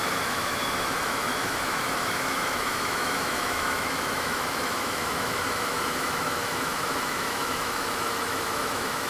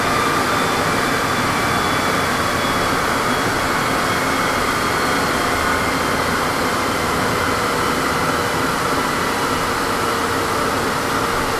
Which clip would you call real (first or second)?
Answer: second